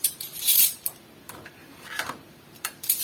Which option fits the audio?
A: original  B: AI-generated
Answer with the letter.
B